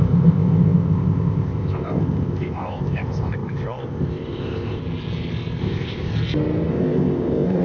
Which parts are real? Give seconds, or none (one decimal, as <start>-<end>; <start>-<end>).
4.8-5.6; 6.1-6.7